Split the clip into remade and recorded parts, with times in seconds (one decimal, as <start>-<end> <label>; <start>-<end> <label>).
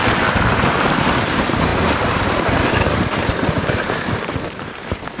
0.0-0.9 recorded; 0.9-5.2 remade